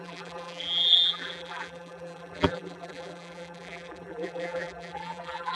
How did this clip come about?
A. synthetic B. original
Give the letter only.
A